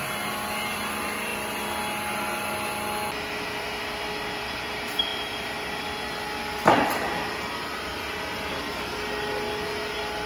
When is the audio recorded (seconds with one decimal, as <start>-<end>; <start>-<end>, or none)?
0.0-10.3